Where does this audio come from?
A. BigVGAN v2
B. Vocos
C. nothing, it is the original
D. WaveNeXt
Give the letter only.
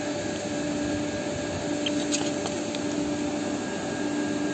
C